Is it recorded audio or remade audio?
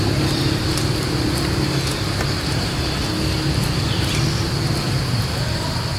recorded